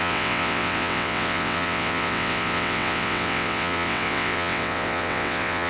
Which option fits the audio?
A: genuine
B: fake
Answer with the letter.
B